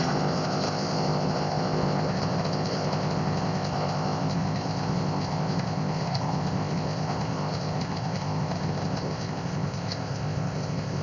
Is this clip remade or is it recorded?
remade